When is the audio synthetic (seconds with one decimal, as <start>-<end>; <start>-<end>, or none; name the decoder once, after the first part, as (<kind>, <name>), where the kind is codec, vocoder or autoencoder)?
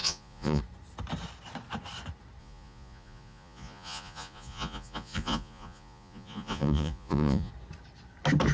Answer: 0.0-0.6 (vocoder, Vocos); 2.4-7.5